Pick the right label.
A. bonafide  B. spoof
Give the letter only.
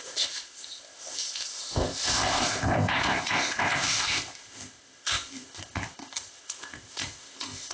B